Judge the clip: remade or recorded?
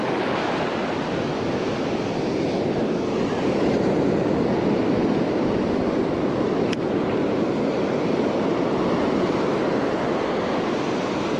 recorded